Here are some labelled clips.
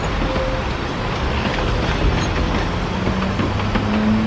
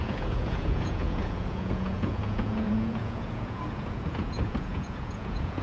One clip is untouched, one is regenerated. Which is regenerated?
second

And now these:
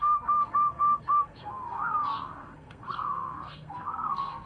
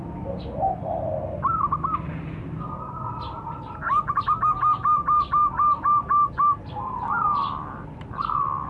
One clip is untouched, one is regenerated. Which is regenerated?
first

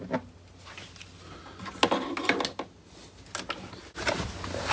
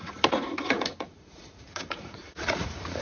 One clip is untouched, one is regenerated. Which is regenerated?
second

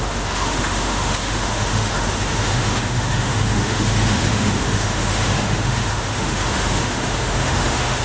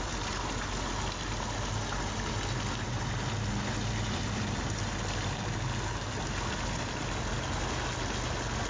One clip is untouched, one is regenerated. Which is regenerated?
first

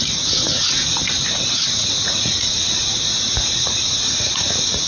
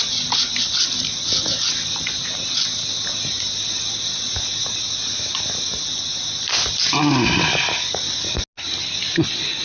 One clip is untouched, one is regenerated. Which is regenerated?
first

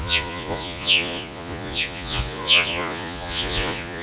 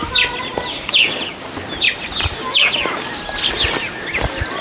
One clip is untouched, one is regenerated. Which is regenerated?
first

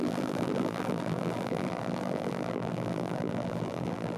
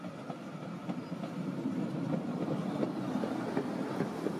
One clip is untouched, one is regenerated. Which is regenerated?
first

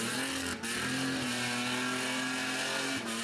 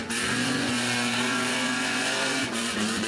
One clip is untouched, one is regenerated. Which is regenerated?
second